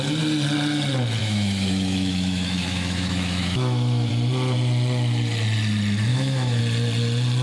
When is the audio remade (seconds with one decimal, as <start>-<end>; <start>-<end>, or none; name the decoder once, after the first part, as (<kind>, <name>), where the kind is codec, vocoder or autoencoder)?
1.2-4.1 (autoencoder, DAC-VAE); 6.1-6.6